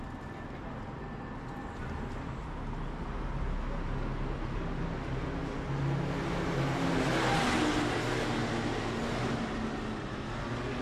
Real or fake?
real